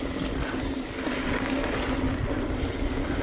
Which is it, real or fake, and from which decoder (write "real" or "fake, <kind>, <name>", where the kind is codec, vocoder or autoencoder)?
real